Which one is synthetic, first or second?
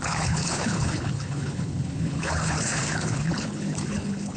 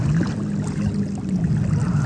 first